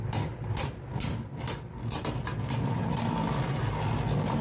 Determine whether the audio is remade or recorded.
recorded